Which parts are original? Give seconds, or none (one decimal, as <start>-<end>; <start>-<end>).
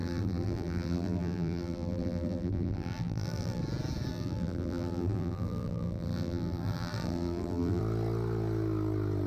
3.6-4.1; 7.8-9.3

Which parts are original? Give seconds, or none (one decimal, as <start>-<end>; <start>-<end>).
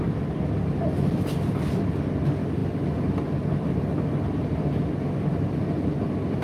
0.0-6.4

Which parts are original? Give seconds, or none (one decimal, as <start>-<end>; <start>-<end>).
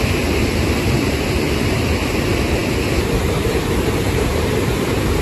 none